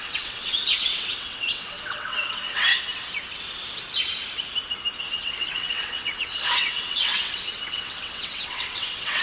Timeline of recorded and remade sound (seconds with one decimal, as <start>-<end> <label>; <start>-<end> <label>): 0.0-2.7 remade; 2.7-5.0 recorded; 5.0-9.2 remade